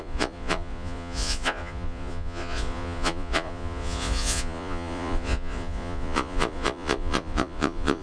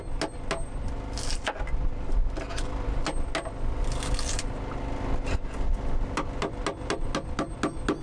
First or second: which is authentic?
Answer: second